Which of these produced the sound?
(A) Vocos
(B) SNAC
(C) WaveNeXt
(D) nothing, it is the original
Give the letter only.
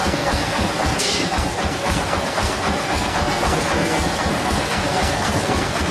B